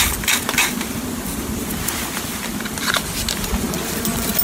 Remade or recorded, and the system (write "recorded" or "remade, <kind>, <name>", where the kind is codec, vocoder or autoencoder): recorded